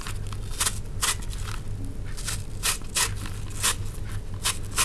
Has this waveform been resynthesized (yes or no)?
no